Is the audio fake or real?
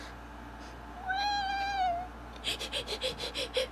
real